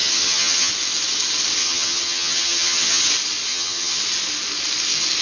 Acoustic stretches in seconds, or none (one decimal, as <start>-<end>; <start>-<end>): 0.7-1.6; 3.0-3.5; 4.0-5.2